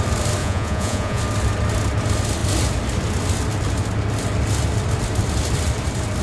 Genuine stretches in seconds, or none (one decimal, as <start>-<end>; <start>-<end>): 0.0-0.4; 1.2-6.2